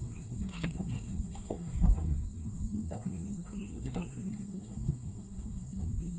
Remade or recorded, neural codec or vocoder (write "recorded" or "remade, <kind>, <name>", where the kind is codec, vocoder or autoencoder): remade, codec, SNAC